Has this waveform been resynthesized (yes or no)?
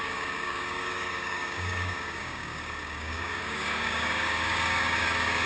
yes